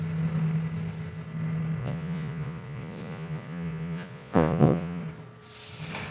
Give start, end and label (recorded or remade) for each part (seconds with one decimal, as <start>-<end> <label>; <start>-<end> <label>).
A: 0.0-1.8 recorded; 1.8-5.0 remade; 5.0-6.1 recorded